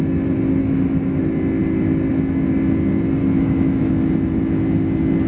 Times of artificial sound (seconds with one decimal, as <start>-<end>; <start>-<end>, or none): 0.6-1.2; 3.2-3.9